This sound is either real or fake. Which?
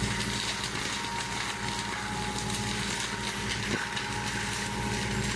real